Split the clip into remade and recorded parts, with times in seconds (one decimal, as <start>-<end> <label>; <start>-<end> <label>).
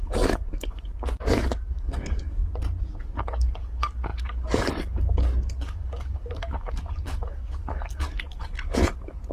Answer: 0.0-2.4 remade; 2.4-3.0 recorded; 3.0-9.3 remade